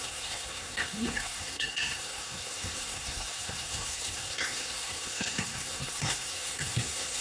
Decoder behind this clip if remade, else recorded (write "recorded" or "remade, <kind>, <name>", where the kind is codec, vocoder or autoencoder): remade, codec, SNAC